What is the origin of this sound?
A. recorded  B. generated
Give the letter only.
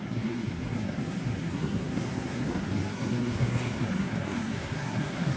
B